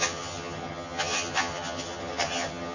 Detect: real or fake fake